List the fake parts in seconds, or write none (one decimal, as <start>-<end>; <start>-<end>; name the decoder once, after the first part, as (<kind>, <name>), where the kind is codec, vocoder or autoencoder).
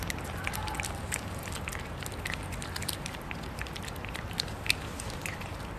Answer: none